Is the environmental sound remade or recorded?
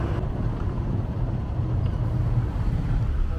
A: recorded